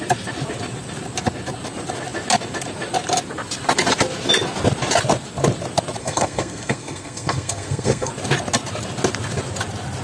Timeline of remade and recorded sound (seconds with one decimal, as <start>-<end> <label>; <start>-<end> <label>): 0.0-6.0 recorded; 6.0-8.1 remade; 8.1-10.0 recorded